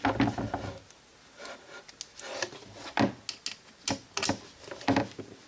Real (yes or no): yes